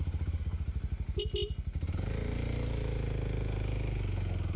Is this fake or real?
real